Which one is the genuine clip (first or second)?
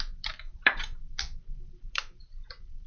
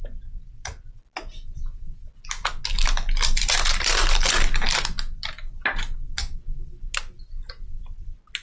second